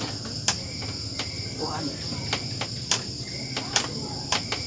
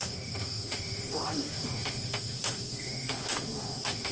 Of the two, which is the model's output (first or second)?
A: second